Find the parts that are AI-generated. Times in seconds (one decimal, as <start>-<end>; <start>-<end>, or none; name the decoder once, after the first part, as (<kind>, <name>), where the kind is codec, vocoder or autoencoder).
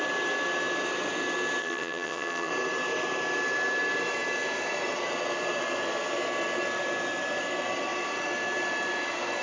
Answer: 1.6-2.5 (vocoder, HiFi-GAN)